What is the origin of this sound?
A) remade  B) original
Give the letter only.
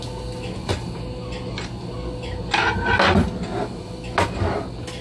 B